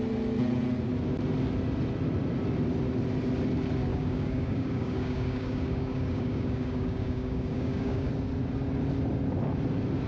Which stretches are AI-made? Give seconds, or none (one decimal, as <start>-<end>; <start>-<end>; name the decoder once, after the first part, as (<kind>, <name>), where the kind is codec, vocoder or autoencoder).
3.9-8.1 (codec, DAC)